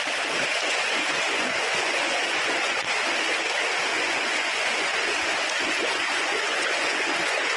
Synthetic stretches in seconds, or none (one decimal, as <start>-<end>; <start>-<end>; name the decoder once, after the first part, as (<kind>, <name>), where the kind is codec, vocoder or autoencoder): 0.5-2.9 (vocoder, Vocos); 3.9-7.6

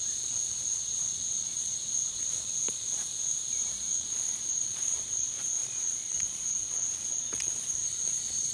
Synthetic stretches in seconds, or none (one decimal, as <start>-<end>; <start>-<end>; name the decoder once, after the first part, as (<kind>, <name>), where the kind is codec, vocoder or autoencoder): 0.0-3.1 (vocoder, Vocos); 3.9-8.5

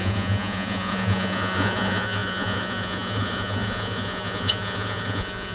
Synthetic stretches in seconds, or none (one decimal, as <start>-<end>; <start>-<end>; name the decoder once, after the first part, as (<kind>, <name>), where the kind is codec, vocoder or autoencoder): 0.0-5.5 (vocoder, Vocos)

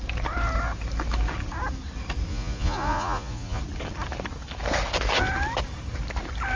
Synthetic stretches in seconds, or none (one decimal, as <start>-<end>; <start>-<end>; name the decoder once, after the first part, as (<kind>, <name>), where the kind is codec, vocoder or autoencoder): 2.3-3.6 (vocoder, Vocos)

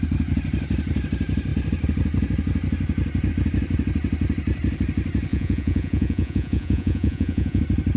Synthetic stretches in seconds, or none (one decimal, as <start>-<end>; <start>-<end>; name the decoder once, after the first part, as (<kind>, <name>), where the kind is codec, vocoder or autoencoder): 5.3-7.6 (vocoder, Vocos)

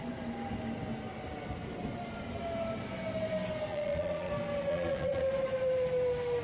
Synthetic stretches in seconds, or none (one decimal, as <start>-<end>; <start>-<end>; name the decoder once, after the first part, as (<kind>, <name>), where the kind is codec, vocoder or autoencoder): 3.7-4.3 (vocoder, Vocos); 4.7-5.3

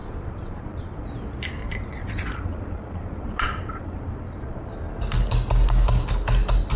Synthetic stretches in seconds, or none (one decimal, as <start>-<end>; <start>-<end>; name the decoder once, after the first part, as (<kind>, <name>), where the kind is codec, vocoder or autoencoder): 0.0-1.1 (vocoder, Vocos); 1.6-4.7